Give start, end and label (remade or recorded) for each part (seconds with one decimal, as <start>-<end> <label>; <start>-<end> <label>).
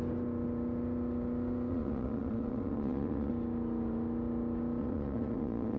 0.0-1.7 recorded; 1.7-3.3 remade; 3.3-4.8 recorded; 4.8-5.8 remade